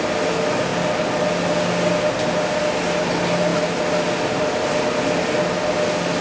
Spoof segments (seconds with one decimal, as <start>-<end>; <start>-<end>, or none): none